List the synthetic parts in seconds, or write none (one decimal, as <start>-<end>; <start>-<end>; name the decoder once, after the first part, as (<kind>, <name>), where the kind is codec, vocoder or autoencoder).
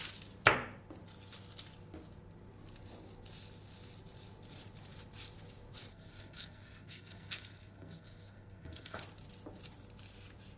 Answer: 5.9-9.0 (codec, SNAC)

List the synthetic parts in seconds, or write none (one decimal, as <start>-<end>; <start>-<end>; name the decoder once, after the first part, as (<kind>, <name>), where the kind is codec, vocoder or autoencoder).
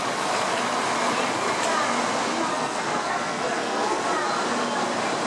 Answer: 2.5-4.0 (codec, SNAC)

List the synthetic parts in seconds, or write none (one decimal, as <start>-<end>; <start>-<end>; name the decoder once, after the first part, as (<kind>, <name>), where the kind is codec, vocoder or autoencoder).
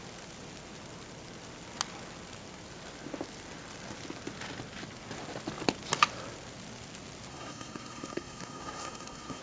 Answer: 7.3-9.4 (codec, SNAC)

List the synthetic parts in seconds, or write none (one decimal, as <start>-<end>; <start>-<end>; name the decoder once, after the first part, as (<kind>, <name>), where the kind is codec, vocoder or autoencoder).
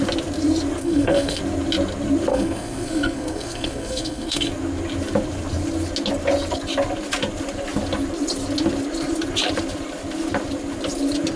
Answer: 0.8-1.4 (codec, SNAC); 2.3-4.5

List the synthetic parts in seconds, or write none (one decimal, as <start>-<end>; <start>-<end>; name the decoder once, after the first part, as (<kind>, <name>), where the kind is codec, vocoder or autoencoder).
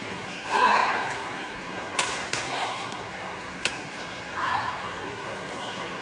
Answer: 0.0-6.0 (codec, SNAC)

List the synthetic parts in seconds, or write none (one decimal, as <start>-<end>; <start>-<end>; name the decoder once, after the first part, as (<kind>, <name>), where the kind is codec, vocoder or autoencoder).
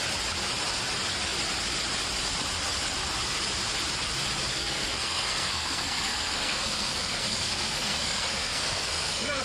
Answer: 4.5-9.4 (codec, SNAC)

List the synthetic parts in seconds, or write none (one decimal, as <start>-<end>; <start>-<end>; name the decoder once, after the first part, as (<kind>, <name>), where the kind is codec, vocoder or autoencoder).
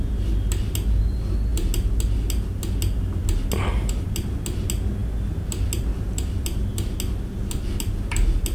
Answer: none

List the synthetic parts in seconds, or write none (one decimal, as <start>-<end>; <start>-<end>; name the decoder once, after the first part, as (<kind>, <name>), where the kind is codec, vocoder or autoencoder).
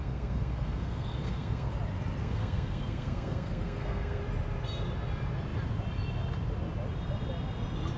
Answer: 0.0-1.7 (codec, SNAC); 2.2-4.2